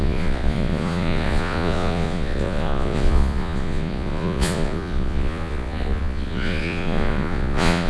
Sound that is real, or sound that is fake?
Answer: fake